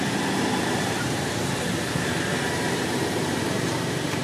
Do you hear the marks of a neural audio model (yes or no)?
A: yes